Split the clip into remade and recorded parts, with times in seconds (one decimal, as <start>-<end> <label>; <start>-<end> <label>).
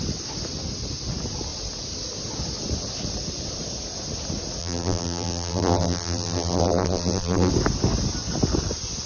0.0-4.6 recorded; 4.6-7.5 remade; 7.5-9.1 recorded